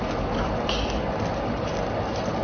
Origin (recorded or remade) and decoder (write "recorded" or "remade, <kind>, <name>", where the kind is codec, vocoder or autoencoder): recorded